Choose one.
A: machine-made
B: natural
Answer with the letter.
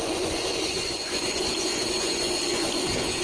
A